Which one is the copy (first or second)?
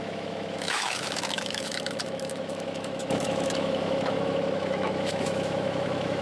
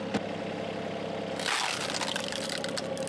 first